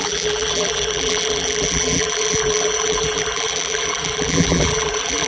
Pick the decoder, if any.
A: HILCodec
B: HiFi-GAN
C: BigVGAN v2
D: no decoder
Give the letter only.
C